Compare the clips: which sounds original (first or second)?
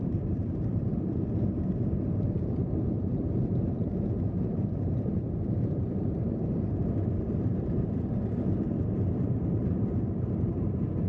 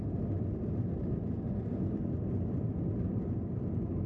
second